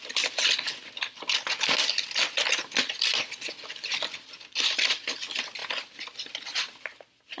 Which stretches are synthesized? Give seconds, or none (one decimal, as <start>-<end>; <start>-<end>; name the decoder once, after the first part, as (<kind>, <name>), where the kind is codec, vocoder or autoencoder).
none